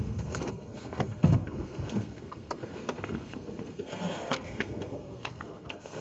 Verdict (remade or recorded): remade